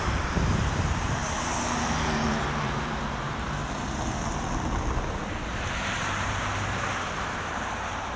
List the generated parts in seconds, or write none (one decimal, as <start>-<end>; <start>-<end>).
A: 0.0-3.6; 5.5-8.2